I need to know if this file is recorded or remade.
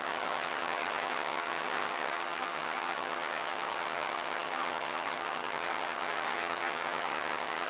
remade